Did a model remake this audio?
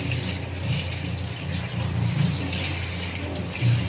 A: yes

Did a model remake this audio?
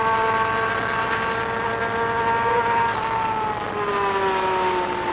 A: no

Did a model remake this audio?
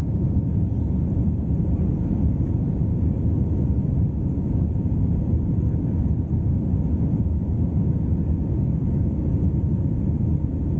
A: no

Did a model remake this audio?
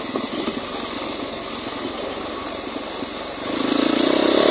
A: no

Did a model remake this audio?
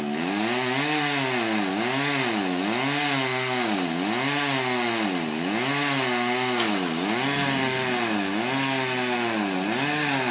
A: no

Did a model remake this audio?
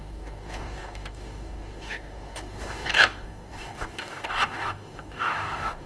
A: yes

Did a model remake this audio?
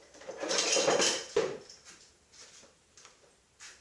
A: yes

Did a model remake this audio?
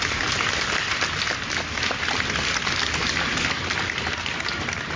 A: no